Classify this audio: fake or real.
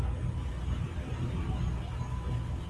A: real